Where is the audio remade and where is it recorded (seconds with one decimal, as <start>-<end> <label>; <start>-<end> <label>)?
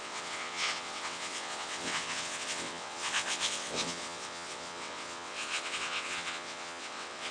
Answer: 0.0-7.3 remade